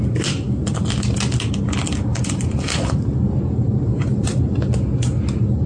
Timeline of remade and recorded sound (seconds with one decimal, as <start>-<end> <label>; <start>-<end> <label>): 0.0-2.1 recorded; 2.1-4.4 remade; 4.4-5.7 recorded